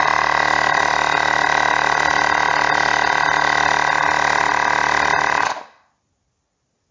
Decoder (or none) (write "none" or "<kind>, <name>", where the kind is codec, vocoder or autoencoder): none